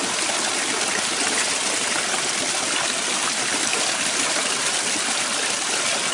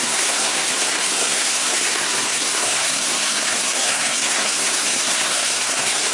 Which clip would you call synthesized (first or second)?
second